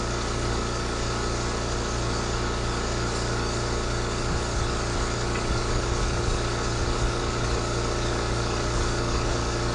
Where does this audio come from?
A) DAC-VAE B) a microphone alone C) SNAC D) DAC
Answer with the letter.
D